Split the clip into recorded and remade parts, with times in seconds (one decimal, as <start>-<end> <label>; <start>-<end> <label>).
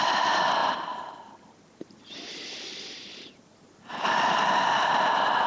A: 0.0-0.6 recorded; 0.6-3.9 remade; 3.9-5.5 recorded